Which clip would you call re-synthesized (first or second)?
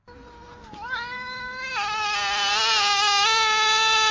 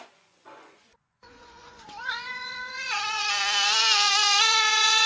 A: second